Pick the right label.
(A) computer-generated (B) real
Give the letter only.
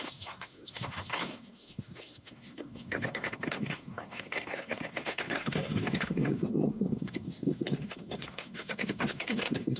A